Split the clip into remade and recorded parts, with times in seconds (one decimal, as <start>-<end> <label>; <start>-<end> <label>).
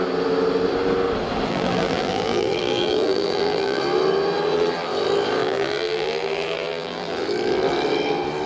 0.0-1.5 recorded; 1.5-3.8 remade; 3.8-5.4 recorded; 5.4-7.1 remade; 7.1-8.5 recorded